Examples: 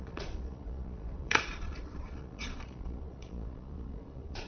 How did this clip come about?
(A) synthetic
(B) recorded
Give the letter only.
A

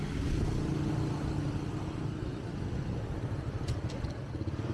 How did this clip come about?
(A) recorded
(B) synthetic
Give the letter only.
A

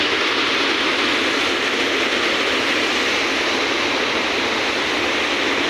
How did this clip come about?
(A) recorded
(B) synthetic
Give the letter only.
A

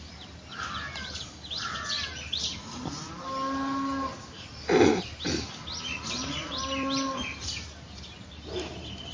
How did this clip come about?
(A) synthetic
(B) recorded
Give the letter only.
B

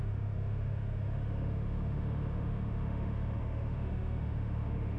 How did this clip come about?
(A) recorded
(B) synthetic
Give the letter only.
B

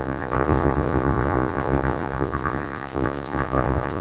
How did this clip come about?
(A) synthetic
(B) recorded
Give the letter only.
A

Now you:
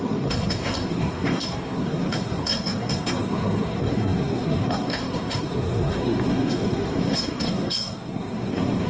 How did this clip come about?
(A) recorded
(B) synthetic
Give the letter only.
B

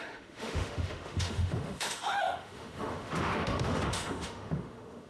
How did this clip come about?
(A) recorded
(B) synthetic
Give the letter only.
B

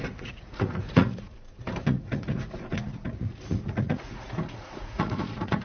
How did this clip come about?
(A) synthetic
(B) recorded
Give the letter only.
A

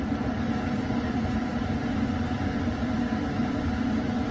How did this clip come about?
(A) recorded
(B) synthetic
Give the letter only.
B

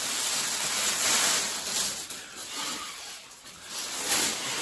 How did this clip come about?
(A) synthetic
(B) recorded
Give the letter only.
B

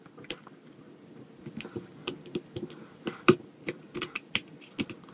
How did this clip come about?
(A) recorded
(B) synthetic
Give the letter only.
B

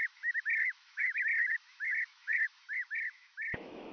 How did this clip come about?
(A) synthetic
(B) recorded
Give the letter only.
A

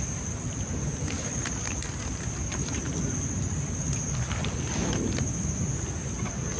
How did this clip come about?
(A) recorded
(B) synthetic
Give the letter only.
A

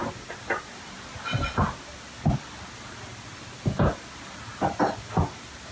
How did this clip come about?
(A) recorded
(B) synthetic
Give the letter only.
A